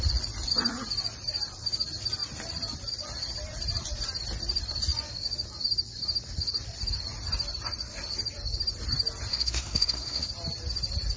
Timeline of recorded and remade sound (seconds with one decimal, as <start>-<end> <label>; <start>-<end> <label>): 0.0-9.3 recorded; 9.3-10.3 remade; 10.3-11.2 recorded